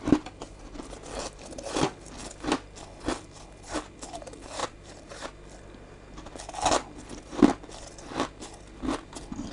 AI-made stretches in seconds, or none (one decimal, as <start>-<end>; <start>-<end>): 4.6-5.1